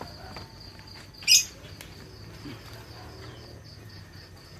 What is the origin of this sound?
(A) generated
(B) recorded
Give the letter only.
B